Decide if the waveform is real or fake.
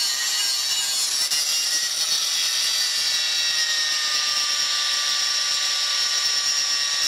real